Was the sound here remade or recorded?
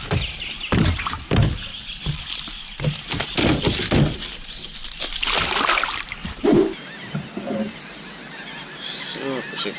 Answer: recorded